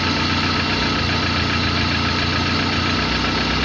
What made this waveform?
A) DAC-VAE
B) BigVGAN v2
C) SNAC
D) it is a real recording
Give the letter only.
D